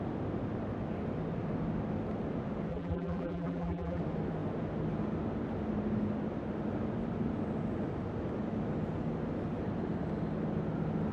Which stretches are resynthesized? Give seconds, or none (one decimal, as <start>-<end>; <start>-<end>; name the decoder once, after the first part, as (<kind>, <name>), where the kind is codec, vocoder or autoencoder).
2.7-4.0 (vocoder, BigVGAN v2)

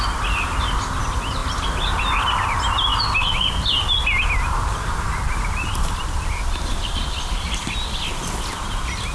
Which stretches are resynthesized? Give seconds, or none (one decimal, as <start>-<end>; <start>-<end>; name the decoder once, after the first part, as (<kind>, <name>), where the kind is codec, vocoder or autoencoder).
none

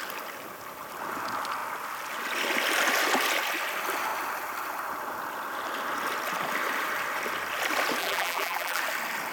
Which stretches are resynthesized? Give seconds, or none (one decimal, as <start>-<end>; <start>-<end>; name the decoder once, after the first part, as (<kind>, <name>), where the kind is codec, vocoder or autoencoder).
8.0-8.8 (vocoder, BigVGAN v2)